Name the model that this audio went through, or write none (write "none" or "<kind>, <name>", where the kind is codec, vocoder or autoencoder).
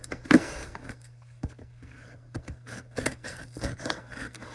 codec, SNAC